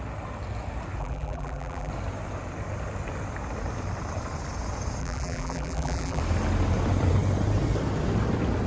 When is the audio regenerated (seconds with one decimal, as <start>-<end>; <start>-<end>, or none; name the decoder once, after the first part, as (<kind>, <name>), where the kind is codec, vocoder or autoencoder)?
1.0-1.9 (vocoder, BigVGAN v2); 5.0-6.2